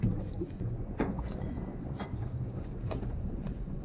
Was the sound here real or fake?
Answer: fake